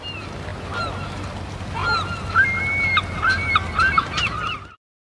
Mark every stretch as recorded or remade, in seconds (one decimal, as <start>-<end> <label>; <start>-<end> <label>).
0.0-5.1 recorded